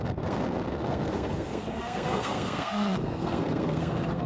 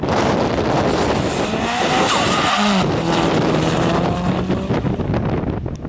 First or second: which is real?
second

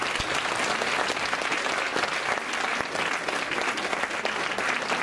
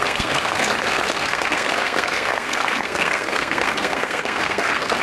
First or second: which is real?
first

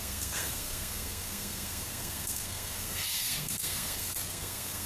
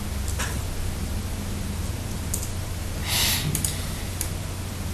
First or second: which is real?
second